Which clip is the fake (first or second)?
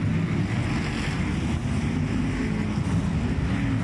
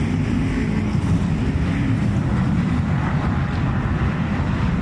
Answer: second